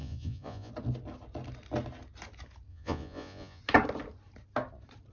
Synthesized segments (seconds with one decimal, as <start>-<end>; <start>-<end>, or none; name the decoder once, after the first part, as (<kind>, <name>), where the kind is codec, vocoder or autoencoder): 0.0-0.7 (vocoder, Vocos); 2.7-3.6